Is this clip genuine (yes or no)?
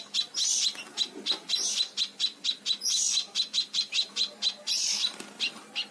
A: yes